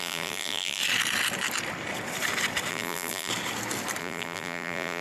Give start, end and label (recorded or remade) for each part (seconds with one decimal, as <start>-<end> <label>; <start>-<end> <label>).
0.0-0.8 remade; 0.8-2.7 recorded; 2.7-3.3 remade; 3.3-4.0 recorded; 4.0-5.0 remade